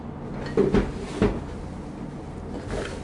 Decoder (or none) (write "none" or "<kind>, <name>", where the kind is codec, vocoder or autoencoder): none